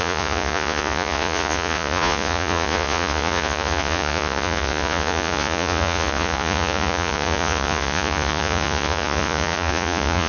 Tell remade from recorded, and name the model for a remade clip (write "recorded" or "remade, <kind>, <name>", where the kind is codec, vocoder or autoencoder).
remade, vocoder, Vocos